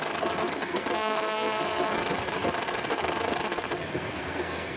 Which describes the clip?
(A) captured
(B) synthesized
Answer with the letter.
B